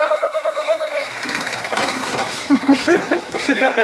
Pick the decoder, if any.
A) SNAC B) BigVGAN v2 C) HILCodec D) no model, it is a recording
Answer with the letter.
A